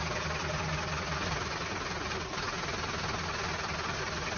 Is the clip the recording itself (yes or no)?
yes